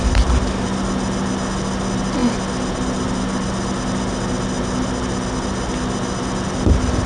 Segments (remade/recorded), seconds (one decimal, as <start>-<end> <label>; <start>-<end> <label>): 0.0-7.1 recorded